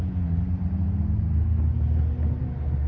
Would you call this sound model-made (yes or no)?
no